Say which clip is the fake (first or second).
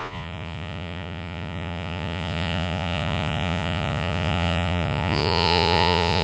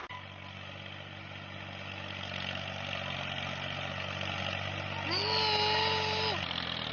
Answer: first